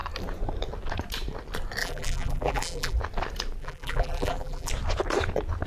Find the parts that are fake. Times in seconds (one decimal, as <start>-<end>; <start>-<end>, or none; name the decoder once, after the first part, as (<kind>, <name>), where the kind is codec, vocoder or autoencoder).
1.8-3.0 (vocoder, BigVGAN v2); 3.6-4.7